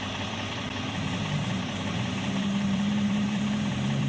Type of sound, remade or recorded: remade